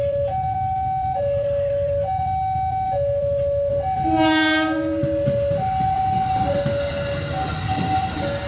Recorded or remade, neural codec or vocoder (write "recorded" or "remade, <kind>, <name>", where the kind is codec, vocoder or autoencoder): recorded